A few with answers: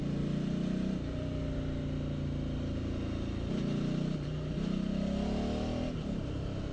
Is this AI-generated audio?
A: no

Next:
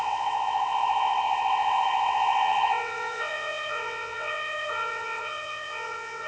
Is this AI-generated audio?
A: yes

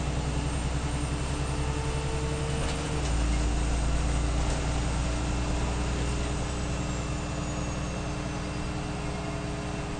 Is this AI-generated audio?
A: no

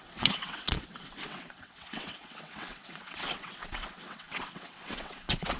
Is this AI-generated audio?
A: yes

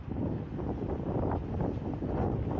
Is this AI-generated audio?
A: no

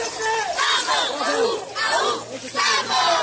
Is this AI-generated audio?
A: no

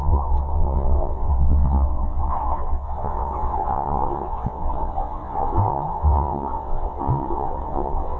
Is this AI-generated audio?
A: yes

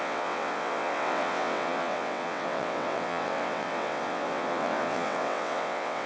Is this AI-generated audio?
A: yes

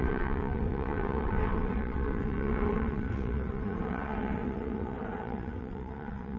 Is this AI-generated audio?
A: yes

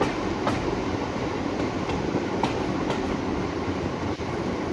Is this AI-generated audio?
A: no